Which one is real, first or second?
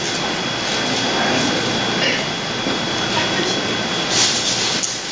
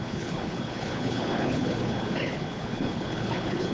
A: first